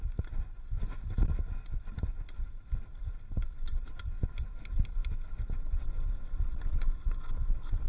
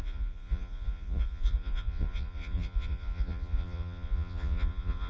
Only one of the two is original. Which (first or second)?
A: first